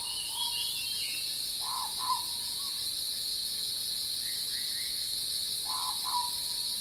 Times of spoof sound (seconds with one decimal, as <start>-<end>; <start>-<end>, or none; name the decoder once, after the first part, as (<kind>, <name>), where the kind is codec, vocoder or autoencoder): 0.0-2.9 (vocoder, Vocos); 3.4-5.2